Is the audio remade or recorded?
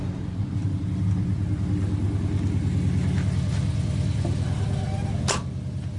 recorded